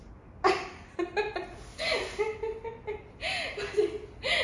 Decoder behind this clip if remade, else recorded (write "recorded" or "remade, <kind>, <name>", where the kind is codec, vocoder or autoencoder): recorded